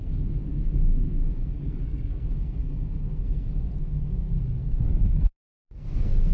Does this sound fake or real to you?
fake